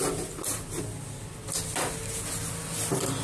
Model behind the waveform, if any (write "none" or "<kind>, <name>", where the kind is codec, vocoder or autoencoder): none